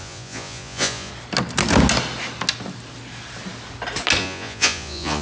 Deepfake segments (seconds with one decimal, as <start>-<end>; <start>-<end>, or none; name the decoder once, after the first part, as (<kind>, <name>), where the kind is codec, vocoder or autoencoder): 0.0-1.1 (vocoder, Vocos); 4.2-5.2